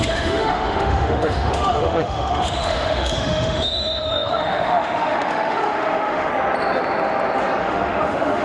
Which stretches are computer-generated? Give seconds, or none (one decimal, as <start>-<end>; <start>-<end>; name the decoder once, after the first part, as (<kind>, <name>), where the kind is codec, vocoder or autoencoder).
0.0-6.3 (autoencoder, DAC-VAE); 7.6-8.4